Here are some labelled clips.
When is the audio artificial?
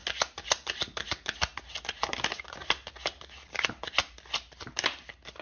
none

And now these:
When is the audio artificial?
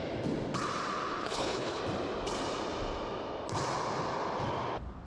1.2-1.8 (codec, HILCodec)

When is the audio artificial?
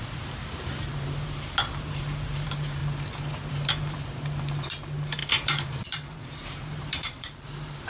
0.0-2.8 (vocoder, BigVGAN v2); 3.5-7.9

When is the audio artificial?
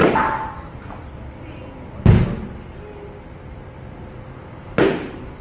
4.6-5.4 (vocoder, BigVGAN v2)